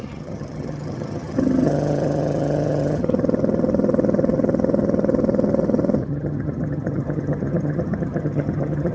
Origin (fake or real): fake